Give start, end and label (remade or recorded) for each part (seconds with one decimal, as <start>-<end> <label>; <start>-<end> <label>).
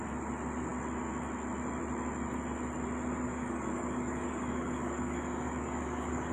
0.0-3.3 recorded; 3.3-6.3 remade